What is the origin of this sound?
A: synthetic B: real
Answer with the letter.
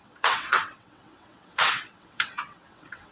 A